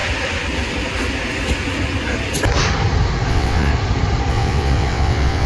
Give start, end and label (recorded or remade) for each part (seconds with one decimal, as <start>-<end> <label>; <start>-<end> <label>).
0.0-3.3 recorded; 3.3-3.7 remade; 3.7-4.3 recorded; 4.3-5.5 remade